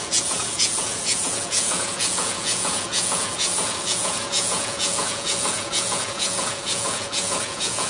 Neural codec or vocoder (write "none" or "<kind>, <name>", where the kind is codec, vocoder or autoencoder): vocoder, Vocos